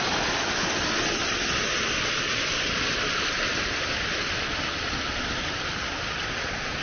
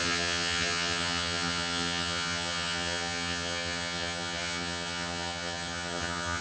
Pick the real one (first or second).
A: first